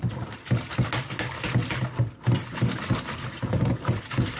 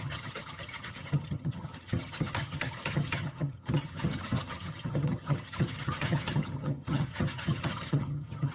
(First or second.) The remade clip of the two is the second